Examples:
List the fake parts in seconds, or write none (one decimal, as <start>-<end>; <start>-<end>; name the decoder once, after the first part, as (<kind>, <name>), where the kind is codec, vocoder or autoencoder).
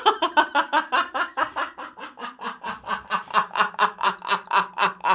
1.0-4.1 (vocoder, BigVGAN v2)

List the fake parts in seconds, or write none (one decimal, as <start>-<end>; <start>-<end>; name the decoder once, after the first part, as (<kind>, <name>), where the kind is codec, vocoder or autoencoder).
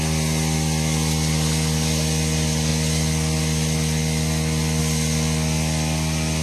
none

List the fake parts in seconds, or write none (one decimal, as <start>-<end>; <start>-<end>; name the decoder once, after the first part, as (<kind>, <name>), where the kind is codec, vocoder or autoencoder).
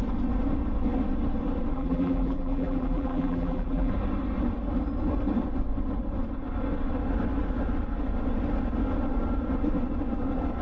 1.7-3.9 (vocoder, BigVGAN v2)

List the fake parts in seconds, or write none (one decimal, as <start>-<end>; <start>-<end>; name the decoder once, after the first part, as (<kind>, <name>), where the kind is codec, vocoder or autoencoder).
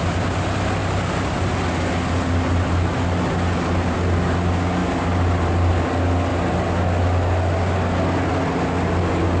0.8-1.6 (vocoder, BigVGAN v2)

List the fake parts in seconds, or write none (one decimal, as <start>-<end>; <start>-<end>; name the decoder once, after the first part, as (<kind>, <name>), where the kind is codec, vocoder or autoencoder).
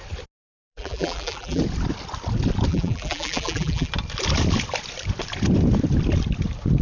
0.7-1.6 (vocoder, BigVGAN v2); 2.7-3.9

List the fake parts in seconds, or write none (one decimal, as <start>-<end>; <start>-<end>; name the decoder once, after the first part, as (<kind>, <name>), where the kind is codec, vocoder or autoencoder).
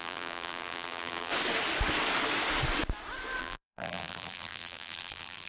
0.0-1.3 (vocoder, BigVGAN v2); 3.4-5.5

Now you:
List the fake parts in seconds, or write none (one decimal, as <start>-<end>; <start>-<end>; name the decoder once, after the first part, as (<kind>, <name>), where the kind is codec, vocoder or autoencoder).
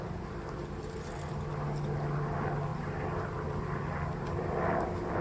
0.6-1.5 (vocoder, BigVGAN v2); 2.7-4.5